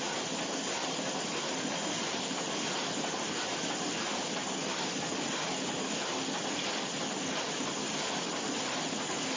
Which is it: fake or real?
real